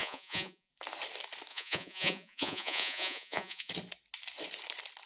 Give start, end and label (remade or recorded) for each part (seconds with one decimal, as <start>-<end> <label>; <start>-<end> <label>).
0.0-0.7 remade; 0.7-1.5 recorded; 1.5-3.7 remade; 3.7-5.1 recorded